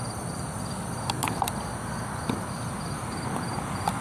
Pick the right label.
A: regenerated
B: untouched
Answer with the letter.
B